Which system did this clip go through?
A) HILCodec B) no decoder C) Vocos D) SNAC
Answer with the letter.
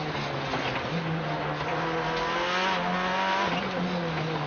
B